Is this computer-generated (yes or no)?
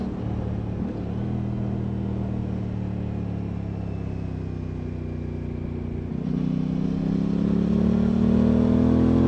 no